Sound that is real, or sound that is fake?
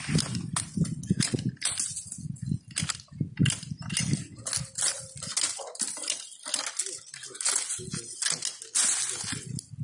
real